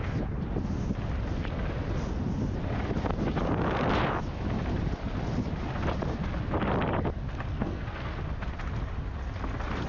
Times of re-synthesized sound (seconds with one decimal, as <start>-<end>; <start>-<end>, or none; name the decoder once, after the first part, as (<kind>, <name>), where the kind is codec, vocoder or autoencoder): 7.5-8.2 (codec, SNAC)